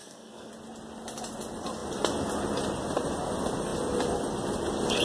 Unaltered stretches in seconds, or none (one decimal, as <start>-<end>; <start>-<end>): 0.5-5.0